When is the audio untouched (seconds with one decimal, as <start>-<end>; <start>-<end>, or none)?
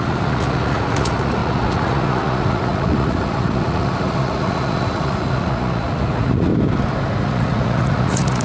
6.5-7.2